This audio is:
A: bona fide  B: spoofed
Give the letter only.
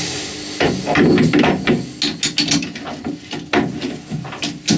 A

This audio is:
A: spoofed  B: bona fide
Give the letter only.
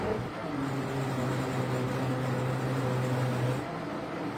B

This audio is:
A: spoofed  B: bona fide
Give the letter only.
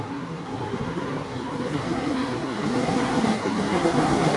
A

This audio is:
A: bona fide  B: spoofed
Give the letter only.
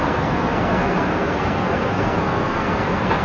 B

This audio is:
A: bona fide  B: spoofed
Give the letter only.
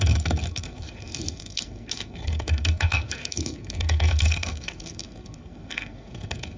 B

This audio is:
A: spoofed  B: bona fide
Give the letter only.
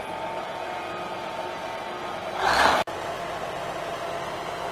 B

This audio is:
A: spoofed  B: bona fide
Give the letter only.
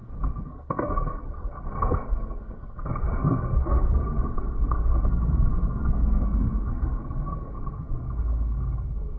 A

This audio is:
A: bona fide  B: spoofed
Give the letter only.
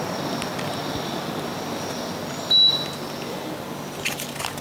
A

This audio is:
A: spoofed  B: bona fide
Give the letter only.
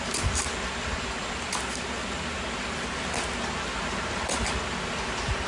B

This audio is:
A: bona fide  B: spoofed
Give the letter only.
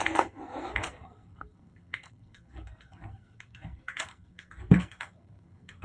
B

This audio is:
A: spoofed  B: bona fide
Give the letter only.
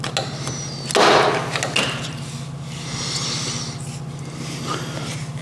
B